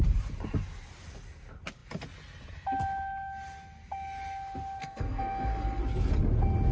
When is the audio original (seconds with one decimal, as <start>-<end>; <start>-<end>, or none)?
0.0-4.8; 5.8-6.7